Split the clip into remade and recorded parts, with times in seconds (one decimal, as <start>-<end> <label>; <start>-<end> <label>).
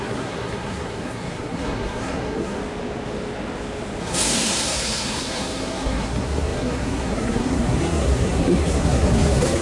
0.0-2.6 remade; 2.6-4.0 recorded; 4.0-9.6 remade